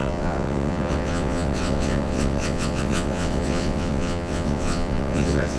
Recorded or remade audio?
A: remade